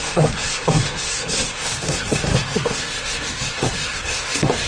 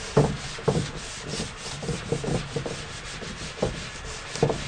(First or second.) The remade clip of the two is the first